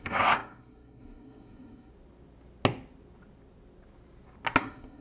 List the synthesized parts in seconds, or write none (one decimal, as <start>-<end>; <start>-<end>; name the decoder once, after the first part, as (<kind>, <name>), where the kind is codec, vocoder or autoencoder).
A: 0.0-1.9 (codec, SNAC); 4.6-5.0